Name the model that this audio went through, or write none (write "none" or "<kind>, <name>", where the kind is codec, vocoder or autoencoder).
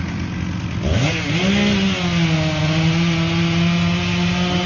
none